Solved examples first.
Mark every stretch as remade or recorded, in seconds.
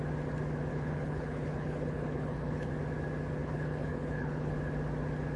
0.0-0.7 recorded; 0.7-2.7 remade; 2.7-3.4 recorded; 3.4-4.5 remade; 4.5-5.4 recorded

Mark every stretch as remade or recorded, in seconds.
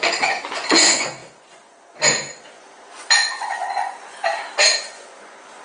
0.0-4.3 remade; 4.3-4.8 recorded; 4.8-5.6 remade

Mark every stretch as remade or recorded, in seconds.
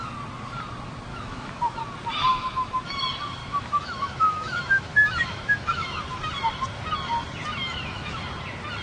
0.0-1.1 recorded; 1.1-1.8 remade; 1.8-2.3 recorded; 2.3-3.0 remade; 3.0-3.4 recorded; 3.4-6.0 remade; 6.0-7.5 recorded; 7.5-8.2 remade; 8.2-8.8 recorded